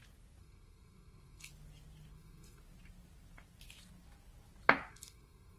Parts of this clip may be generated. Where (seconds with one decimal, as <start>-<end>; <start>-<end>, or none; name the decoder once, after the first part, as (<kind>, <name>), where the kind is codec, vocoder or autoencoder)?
0.4-1.5 (codec, SNAC); 2.1-2.6; 4.9-5.6